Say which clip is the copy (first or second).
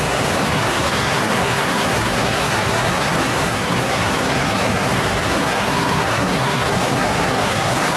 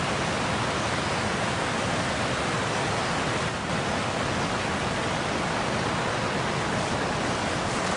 first